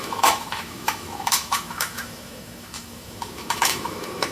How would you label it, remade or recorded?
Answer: remade